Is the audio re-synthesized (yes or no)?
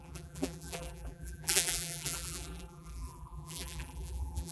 yes